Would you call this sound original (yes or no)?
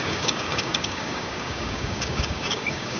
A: no